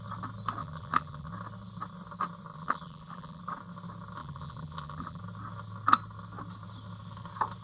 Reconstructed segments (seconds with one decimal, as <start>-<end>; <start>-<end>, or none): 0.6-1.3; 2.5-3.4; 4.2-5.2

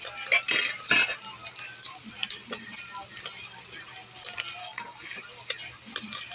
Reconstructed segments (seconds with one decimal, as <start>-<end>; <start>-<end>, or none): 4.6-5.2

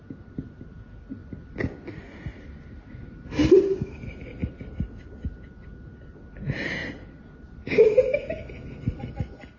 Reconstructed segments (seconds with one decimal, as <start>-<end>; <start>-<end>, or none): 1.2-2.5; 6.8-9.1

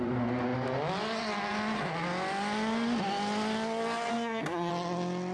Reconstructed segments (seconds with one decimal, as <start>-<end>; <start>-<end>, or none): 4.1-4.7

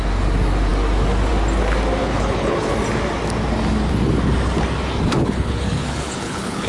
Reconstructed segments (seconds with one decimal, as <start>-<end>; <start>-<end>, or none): 2.0-2.7; 5.2-6.7

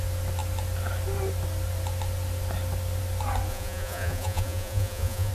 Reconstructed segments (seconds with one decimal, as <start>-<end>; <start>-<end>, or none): 3.5-5.3

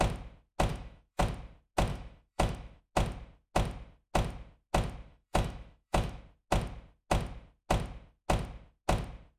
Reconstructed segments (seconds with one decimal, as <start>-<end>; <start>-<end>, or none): 0.7-1.2; 1.9-2.8; 5.1-6.2

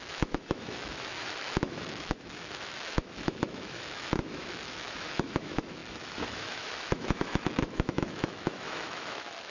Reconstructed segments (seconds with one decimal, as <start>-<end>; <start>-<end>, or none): 0.0-9.5